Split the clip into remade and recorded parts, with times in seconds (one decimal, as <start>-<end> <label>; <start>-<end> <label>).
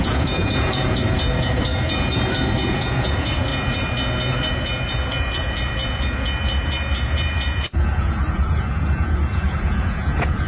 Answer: 0.0-10.5 remade